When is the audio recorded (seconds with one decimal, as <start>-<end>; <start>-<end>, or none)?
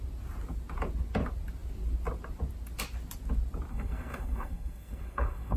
0.0-3.7